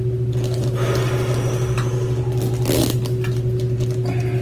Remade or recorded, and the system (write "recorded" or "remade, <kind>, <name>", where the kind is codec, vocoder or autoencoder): recorded